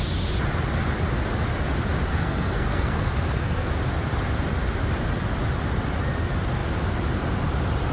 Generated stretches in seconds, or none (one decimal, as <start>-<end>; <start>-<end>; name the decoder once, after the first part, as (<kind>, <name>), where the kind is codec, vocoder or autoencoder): 2.1-3.7 (codec, SNAC)